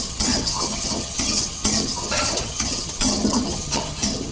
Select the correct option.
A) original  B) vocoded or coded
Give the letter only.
B